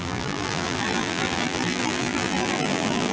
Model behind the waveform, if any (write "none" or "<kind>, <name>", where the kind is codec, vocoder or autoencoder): vocoder, BigVGAN v2